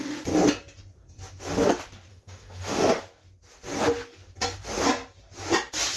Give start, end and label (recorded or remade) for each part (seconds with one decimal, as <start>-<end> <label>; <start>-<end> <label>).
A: 0.0-2.1 recorded; 2.1-3.0 remade; 3.0-6.0 recorded